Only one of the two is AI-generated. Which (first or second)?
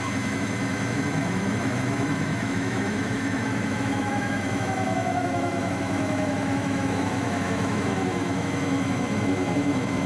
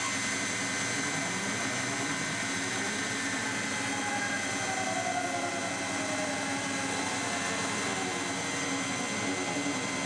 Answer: first